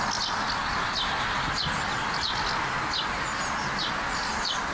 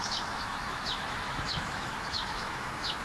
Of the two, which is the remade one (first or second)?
second